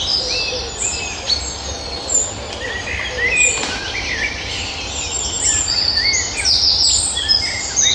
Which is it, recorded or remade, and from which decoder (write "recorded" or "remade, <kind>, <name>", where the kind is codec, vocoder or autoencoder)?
recorded